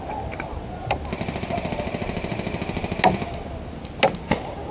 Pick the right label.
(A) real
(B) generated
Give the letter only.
A